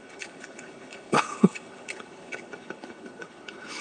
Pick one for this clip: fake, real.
fake